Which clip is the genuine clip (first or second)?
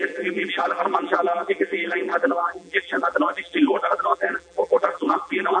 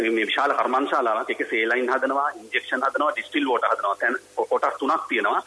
second